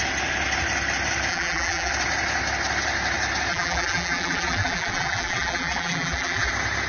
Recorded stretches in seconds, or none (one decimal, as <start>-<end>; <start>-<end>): 0.0-1.3; 1.9-3.5; 6.5-6.9